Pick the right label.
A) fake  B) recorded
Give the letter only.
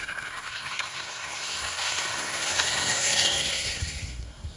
A